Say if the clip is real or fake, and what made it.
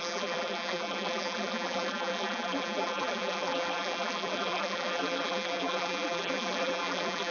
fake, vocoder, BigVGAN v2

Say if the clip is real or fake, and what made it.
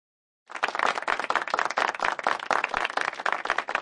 real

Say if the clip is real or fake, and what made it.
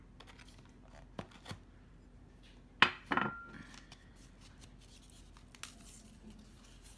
real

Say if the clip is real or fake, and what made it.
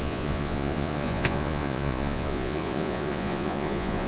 fake, vocoder, Vocos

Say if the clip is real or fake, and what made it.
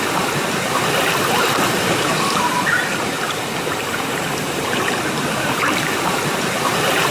fake, vocoder, BigVGAN v2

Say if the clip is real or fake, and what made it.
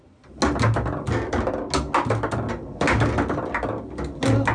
real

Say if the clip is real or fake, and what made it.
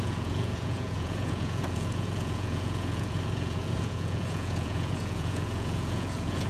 fake, vocoder, Vocos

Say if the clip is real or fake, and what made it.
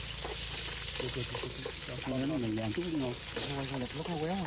real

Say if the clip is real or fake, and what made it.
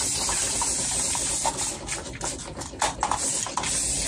real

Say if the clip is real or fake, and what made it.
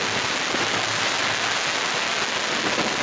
real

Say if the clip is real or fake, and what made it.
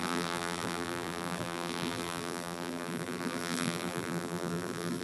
fake, vocoder, BigVGAN v2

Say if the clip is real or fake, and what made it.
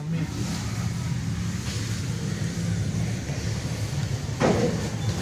real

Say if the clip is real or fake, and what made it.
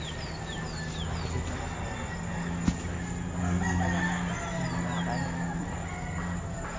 real